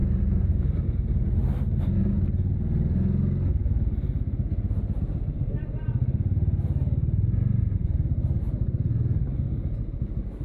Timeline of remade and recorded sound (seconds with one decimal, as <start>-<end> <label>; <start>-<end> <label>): 0.0-1.4 remade; 1.4-5.0 recorded; 5.0-10.4 remade